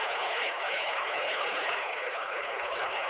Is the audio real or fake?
fake